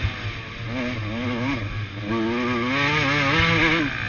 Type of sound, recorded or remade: recorded